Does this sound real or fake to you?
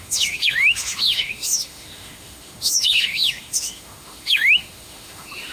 fake